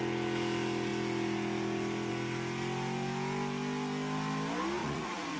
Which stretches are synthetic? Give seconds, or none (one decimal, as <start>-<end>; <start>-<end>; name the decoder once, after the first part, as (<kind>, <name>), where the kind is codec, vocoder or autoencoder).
4.8-5.4 (vocoder, Vocos)